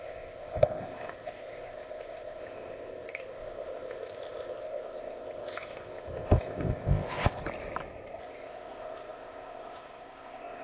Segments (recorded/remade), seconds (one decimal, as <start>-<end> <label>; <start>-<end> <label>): 0.0-7.4 remade; 7.4-8.2 recorded; 8.2-10.6 remade

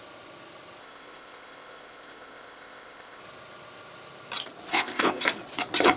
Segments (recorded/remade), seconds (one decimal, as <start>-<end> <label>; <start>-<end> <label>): 0.0-0.8 recorded; 0.8-3.2 remade; 3.2-4.7 recorded; 4.7-5.2 remade; 5.2-6.0 recorded

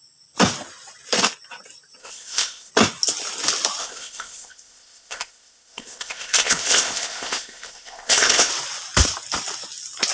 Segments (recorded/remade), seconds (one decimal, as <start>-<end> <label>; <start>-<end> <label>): 0.0-2.0 recorded; 2.0-2.7 remade; 2.7-3.8 recorded; 3.8-8.5 remade; 8.5-10.1 recorded

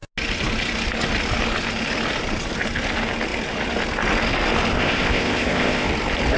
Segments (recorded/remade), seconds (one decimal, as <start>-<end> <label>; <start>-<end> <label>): 0.0-4.7 recorded; 4.7-5.9 remade; 5.9-6.4 recorded